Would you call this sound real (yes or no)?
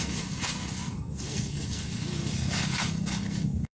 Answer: no